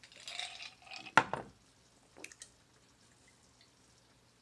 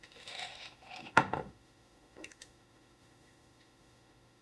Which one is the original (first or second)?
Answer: first